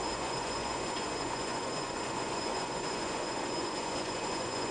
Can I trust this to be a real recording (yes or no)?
no